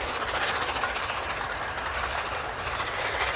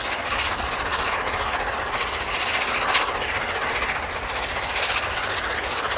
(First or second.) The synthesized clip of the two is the first